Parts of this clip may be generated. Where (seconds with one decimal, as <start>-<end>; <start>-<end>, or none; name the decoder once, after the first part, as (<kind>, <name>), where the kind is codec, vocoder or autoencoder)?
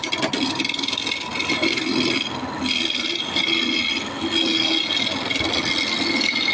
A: 1.3-4.3 (vocoder, BigVGAN v2)